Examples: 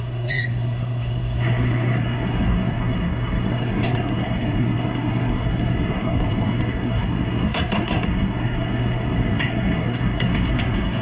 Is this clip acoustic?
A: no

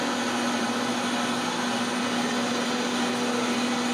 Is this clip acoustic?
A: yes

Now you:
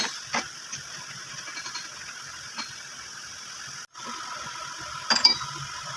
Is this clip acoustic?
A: yes